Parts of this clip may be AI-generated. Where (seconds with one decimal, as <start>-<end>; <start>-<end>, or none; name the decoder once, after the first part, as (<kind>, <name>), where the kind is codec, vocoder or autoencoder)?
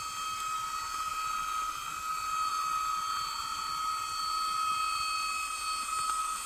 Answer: none